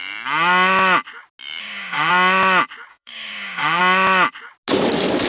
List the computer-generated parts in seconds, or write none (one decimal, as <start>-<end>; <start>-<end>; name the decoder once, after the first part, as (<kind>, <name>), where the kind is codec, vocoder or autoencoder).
1.6-2.1 (autoencoder, DAC-VAE); 2.9-3.8